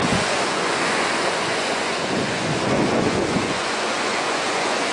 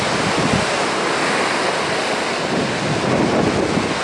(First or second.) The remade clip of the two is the first